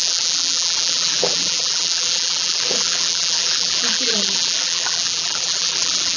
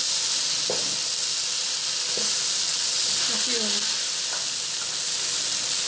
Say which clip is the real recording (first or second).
second